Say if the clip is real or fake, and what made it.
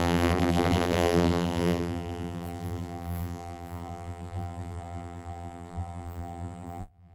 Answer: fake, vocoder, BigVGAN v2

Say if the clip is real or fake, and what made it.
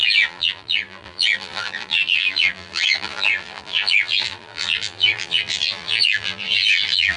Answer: fake, vocoder, BigVGAN v2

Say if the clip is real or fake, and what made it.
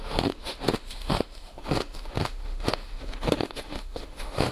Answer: fake, autoencoder, DAC-VAE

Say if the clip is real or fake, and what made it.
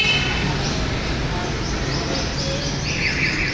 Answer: real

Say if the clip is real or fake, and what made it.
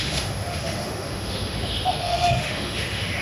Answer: fake, autoencoder, DAC-VAE